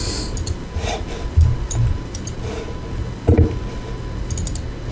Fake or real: real